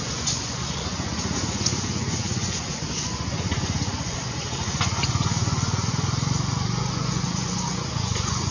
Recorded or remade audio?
remade